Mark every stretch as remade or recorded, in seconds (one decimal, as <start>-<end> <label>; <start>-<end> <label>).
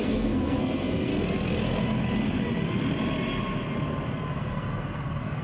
0.0-1.1 remade; 1.1-4.3 recorded; 4.3-5.4 remade